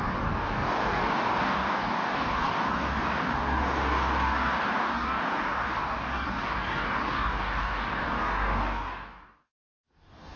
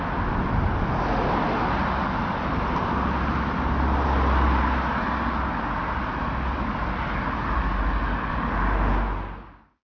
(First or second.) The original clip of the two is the second